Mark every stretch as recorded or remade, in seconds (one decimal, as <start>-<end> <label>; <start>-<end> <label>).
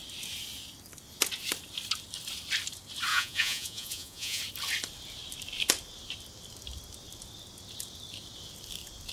0.0-3.1 recorded; 3.1-4.4 remade; 4.4-9.1 recorded